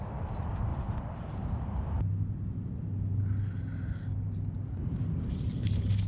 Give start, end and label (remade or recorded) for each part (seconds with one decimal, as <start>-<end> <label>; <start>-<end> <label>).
0.0-6.1 recorded